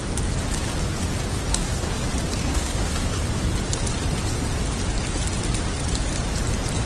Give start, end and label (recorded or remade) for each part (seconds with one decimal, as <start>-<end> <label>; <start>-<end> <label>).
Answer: 0.0-1.5 recorded; 1.5-2.0 remade; 2.0-2.4 recorded; 2.4-3.2 remade; 3.2-6.9 recorded